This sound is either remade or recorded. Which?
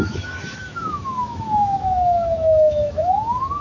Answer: remade